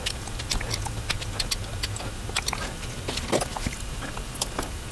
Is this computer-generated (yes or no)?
no